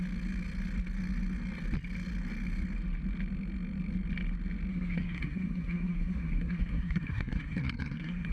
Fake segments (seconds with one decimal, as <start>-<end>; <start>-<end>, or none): 4.7-8.3